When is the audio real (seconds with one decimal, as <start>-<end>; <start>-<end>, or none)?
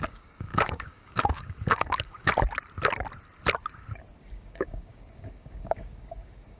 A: 2.3-4.2